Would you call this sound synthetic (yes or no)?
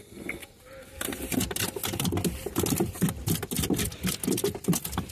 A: no